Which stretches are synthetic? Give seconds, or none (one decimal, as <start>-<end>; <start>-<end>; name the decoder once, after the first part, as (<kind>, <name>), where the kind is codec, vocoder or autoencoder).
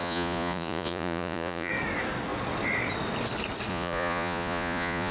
0.0-1.7 (vocoder, Vocos); 3.7-5.1